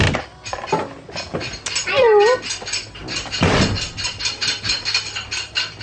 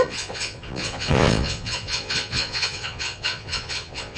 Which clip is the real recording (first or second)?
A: first